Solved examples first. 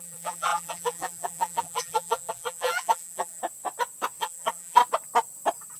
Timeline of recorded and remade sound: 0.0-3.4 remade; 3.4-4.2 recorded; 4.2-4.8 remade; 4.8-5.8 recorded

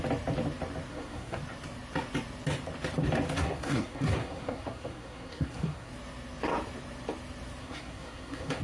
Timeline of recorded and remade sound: 0.0-0.9 recorded; 0.9-1.4 remade; 1.4-3.4 recorded; 3.4-5.9 remade; 5.9-7.6 recorded; 7.6-8.6 remade

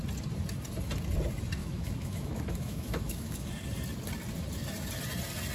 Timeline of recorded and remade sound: 0.0-1.6 recorded; 1.6-3.5 remade; 3.5-5.5 recorded

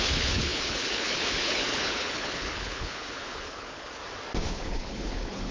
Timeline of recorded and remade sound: 0.0-4.0 remade; 4.0-4.5 recorded; 4.5-5.5 remade

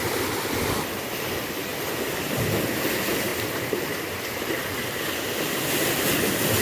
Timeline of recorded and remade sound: 0.0-6.6 recorded

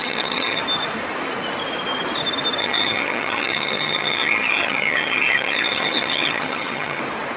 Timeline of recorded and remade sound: 0.0-0.6 remade; 0.6-2.6 recorded; 2.6-7.0 remade; 7.0-7.4 recorded

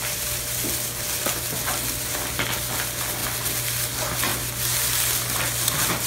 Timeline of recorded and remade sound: 0.0-6.1 recorded

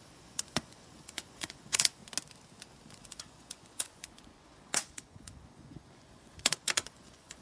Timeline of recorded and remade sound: 0.0-2.0 remade; 2.0-2.9 recorded; 2.9-7.4 remade